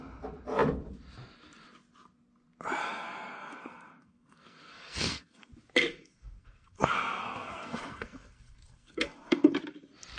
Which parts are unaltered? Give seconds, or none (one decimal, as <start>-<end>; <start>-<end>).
0.0-2.8; 5.5-5.9; 9.6-10.2